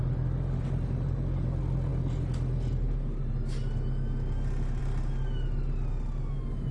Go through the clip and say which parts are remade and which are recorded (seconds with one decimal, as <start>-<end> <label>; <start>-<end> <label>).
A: 0.0-6.7 recorded